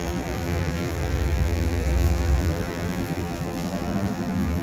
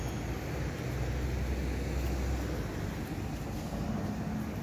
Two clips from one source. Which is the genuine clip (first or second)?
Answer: second